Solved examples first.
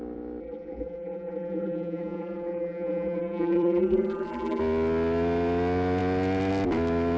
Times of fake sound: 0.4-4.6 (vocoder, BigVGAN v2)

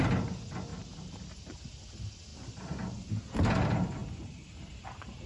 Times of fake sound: 0.7-1.8 (vocoder, BigVGAN v2); 4.0-5.3

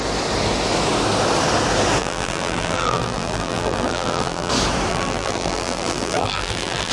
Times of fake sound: 2.0-4.5 (vocoder, BigVGAN v2); 4.9-6.9

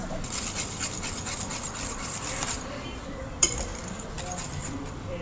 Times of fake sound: 0.0-3.7 (vocoder, BigVGAN v2); 4.5-5.2

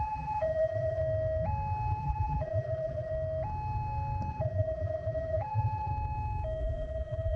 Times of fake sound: 0.0-1.0 (vocoder, BigVGAN v2); 2.0-3.1; 4.3-5.9; 6.6-7.4

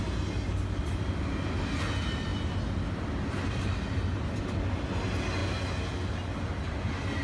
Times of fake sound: none